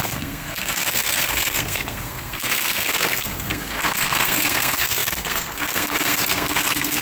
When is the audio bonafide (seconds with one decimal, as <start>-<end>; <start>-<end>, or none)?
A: none

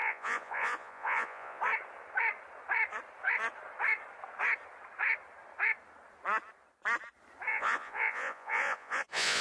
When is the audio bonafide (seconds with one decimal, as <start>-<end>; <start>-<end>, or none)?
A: 1.6-7.5

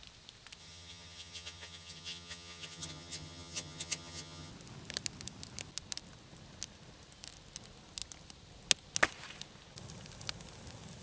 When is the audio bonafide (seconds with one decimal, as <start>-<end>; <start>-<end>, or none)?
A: 0.0-0.6; 4.5-11.0

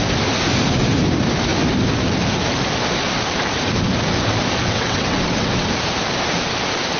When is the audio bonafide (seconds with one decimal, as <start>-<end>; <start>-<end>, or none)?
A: 0.0-4.6; 5.7-7.0

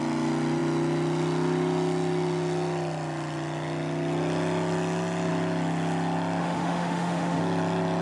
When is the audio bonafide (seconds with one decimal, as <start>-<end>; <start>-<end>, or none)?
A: 0.0-6.4; 7.4-8.0

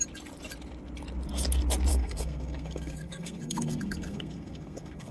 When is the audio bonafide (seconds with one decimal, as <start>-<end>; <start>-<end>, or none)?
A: 0.0-1.9